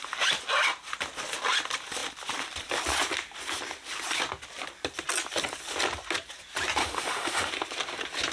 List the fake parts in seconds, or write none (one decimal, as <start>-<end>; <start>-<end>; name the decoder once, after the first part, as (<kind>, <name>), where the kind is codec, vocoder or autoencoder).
6.8-7.5 (autoencoder, DAC-VAE)

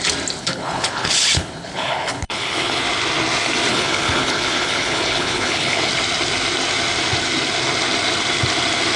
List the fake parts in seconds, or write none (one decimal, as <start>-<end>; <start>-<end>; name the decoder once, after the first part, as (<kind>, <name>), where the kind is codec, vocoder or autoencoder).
0.4-2.8 (codec, HILCodec); 3.7-5.9

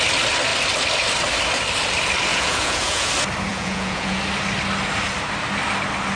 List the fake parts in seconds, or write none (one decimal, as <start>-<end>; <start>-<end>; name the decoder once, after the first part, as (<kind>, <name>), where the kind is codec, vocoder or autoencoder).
2.3-3.1 (vocoder, Vocos); 3.5-4.2

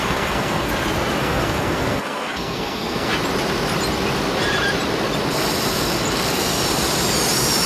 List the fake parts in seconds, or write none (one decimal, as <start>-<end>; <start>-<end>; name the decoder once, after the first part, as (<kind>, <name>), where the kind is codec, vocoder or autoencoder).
0.0-0.7 (codec, SNAC); 1.2-3.1

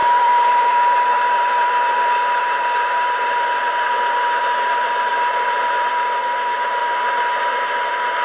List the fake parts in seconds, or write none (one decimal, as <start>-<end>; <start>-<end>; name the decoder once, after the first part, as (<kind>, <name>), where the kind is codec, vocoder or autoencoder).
0.0-8.2 (vocoder, BigVGAN v2)

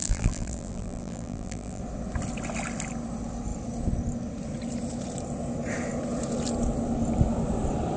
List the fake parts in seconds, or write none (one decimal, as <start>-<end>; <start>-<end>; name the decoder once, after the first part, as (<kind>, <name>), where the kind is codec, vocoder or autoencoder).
0.0-1.8 (vocoder, BigVGAN v2)